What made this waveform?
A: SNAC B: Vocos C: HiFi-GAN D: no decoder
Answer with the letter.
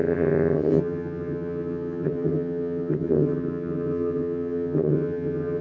C